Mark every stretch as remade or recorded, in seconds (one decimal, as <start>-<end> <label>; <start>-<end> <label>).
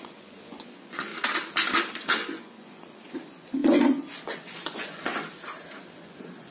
0.0-1.1 remade; 1.1-1.9 recorded; 1.9-5.1 remade; 5.1-5.8 recorded; 5.8-6.5 remade